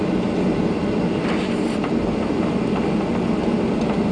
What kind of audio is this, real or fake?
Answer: real